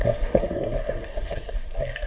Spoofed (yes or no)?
yes